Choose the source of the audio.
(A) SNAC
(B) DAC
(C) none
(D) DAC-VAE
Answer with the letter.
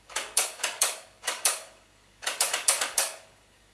B